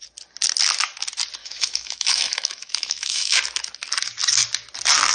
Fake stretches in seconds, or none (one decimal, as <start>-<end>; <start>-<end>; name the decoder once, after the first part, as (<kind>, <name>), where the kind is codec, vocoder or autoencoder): 1.4-3.4 (autoencoder, DAC-VAE)